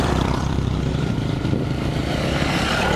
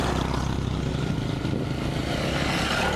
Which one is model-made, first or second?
first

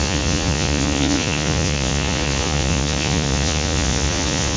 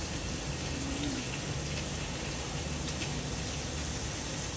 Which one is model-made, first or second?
first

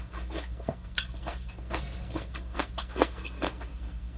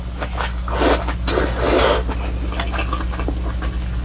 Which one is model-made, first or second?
first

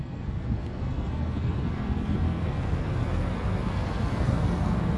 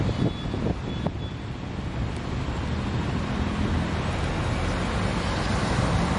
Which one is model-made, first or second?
first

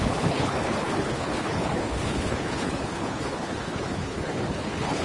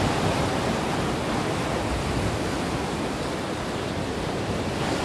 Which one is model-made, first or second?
first